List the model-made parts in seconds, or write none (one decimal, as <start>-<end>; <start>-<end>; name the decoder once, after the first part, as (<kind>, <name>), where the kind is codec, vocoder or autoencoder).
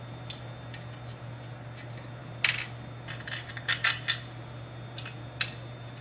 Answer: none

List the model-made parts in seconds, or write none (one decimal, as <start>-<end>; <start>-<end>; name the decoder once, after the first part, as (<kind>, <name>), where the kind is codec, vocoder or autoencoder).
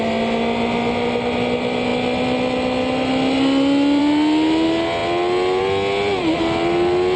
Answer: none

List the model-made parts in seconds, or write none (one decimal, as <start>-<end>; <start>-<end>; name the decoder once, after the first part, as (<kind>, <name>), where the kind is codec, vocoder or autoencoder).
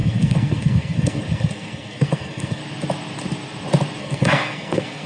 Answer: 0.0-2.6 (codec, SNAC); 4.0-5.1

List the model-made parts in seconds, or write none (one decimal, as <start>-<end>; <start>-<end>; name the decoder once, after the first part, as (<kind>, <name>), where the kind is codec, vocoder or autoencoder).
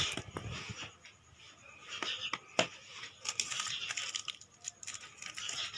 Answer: none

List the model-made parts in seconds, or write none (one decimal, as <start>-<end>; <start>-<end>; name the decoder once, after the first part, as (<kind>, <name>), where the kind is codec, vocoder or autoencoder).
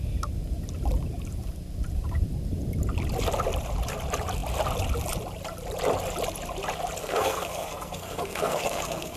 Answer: 7.0-9.2 (codec, SNAC)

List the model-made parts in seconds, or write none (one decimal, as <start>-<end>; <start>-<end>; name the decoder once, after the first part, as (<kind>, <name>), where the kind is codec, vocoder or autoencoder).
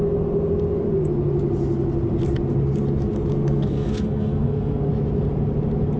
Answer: 3.3-4.9 (codec, SNAC)